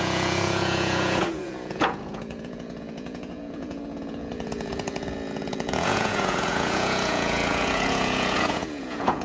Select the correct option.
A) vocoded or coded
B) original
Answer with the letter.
A